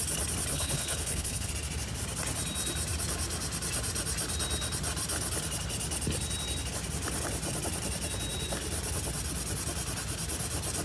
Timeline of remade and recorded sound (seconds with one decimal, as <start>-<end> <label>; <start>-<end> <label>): 0.0-0.5 recorded; 0.5-1.5 remade; 1.5-10.8 recorded